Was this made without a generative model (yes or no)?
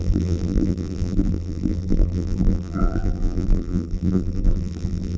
no